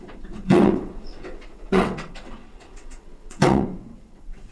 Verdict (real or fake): fake